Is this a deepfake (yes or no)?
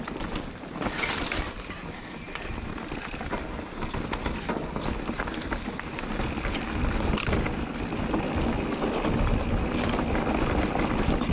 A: no